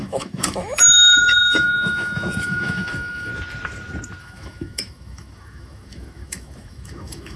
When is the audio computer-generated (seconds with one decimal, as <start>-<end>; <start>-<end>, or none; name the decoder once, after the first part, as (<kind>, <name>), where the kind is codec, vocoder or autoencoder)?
0.0-3.3 (autoencoder, DAC-VAE); 4.2-7.4